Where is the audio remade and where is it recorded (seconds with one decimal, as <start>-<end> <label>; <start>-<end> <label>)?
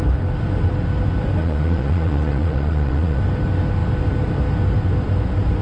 0.0-1.4 recorded; 1.4-3.2 remade; 3.2-5.6 recorded